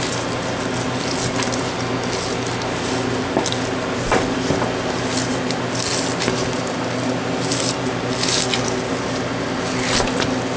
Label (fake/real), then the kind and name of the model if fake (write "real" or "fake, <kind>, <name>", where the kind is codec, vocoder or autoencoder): real